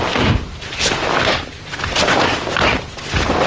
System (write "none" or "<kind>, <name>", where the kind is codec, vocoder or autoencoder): none